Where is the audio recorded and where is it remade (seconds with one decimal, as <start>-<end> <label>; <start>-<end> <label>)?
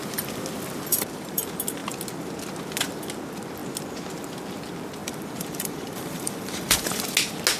0.0-0.9 recorded; 0.9-1.4 remade; 1.4-5.0 recorded; 5.0-7.0 remade; 7.0-7.6 recorded